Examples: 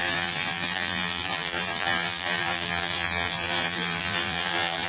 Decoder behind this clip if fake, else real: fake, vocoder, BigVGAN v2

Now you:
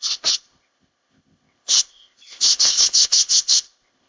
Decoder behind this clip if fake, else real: fake, codec, ZipCodec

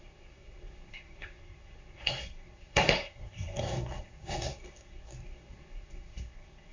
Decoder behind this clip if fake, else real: fake, codec, SNAC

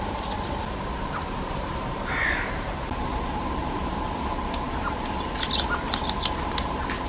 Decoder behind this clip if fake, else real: real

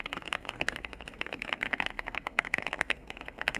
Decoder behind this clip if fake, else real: fake, codec, SNAC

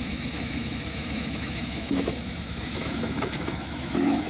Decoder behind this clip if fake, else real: fake, autoencoder, DAC-VAE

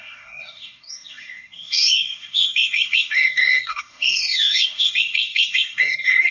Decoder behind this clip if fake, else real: fake, codec, SNAC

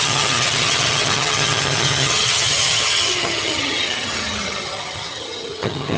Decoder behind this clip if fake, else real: fake, vocoder, HiFi-GAN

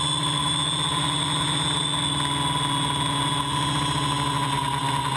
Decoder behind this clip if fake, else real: real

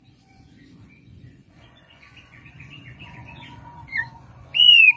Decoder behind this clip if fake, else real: fake, vocoder, Vocos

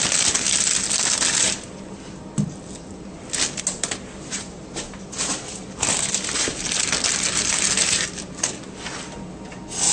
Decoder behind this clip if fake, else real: real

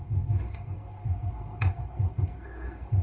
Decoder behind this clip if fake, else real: fake, codec, SNAC